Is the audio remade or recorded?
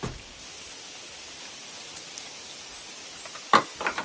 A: recorded